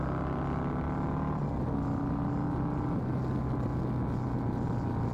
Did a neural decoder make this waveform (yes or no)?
no